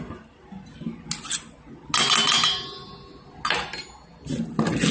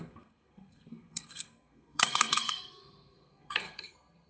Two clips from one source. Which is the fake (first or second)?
second